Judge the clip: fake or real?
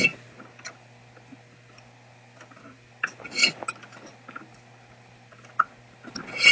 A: real